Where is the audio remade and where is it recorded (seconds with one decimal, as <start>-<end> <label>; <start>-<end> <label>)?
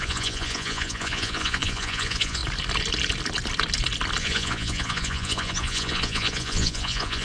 0.0-2.4 remade; 2.4-4.2 recorded; 4.2-7.2 remade